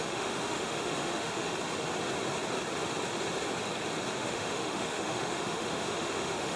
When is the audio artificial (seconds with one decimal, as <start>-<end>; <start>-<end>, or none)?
0.0-1.5; 4.2-6.6